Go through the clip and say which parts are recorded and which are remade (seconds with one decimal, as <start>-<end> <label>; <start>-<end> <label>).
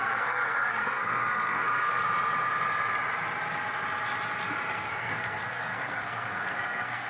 0.0-2.0 remade; 2.0-4.7 recorded; 4.7-7.1 remade